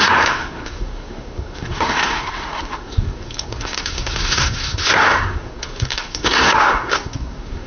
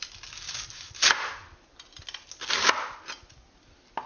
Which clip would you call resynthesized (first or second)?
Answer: first